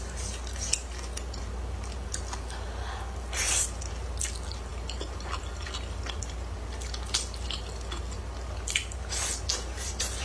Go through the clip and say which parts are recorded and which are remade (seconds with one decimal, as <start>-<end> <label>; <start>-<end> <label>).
0.0-10.2 recorded